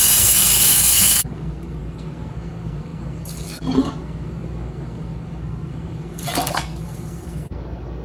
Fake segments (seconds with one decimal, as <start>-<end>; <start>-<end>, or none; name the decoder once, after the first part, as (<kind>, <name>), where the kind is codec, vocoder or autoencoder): 0.0-8.0 (codec, SNAC)